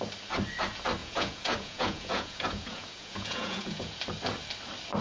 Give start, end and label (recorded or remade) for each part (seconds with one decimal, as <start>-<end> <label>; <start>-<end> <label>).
0.0-1.0 recorded; 1.0-4.0 remade; 4.0-5.0 recorded

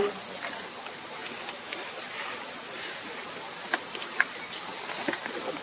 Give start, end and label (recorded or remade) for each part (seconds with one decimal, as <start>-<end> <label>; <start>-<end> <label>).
0.0-5.6 recorded

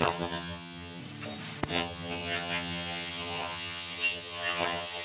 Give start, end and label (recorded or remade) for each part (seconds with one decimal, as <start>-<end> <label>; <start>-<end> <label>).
0.0-1.0 remade; 1.0-1.7 recorded; 1.7-5.0 remade

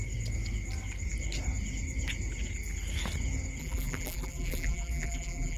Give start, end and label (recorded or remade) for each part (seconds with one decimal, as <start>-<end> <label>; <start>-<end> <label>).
0.0-3.6 recorded; 3.6-5.6 remade

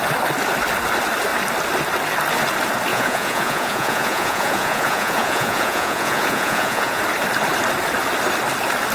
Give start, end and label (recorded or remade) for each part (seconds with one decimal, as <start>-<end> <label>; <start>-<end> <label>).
0.0-2.9 recorded; 2.9-7.0 remade; 7.0-8.9 recorded

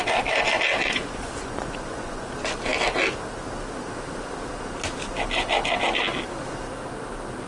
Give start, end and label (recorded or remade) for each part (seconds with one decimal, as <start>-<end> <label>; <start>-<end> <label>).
0.0-0.8 recorded; 0.8-2.3 remade; 2.3-7.5 recorded